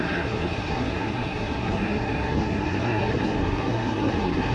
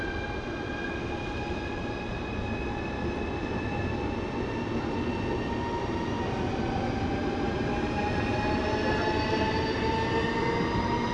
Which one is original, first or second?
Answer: second